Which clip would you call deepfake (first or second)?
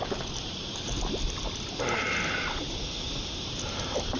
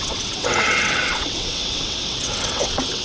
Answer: second